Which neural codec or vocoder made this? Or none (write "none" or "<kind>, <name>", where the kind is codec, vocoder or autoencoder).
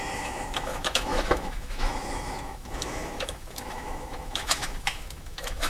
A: autoencoder, DAC-VAE